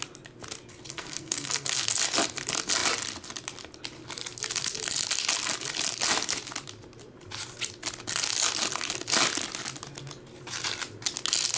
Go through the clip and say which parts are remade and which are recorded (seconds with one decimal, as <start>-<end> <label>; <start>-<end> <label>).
0.0-0.9 recorded; 0.9-1.9 remade; 1.9-11.6 recorded